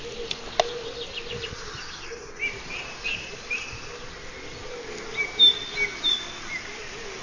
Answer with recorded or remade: recorded